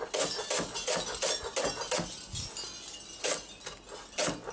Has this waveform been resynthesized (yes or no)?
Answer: no